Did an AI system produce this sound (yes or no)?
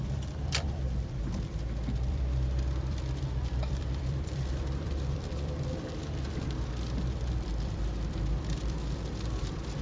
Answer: yes